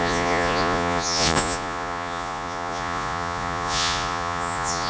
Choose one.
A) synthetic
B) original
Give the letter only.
A